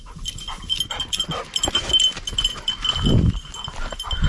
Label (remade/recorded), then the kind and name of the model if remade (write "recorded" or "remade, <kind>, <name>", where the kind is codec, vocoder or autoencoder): recorded